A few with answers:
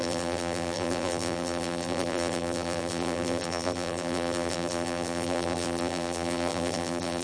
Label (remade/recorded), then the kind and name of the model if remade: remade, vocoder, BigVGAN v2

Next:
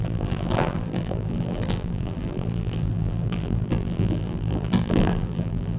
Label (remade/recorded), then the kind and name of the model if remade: remade, vocoder, BigVGAN v2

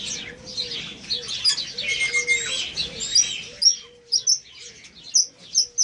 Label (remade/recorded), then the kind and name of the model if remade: recorded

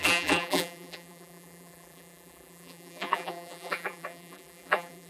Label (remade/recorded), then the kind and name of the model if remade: remade, vocoder, BigVGAN v2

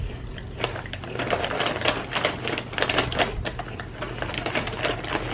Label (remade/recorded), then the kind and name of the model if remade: remade, vocoder, BigVGAN v2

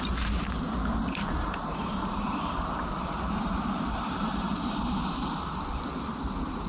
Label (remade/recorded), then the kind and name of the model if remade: remade, vocoder, BigVGAN v2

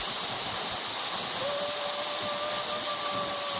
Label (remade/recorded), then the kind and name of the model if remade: recorded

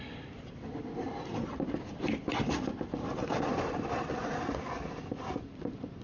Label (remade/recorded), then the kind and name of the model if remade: remade, vocoder, BigVGAN v2